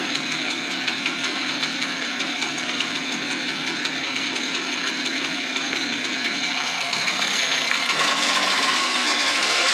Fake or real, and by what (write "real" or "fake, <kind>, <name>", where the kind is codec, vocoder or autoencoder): fake, codec, SNAC